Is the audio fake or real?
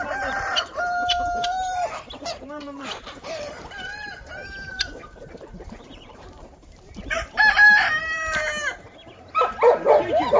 fake